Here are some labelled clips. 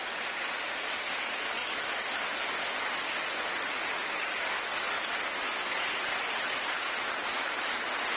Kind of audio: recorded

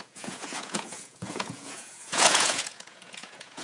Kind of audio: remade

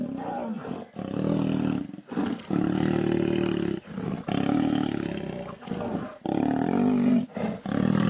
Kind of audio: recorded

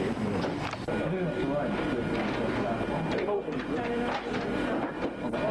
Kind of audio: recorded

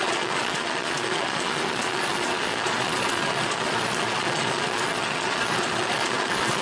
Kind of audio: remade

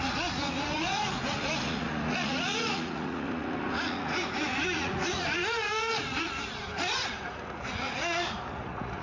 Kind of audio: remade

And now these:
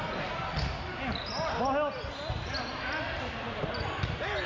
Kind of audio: recorded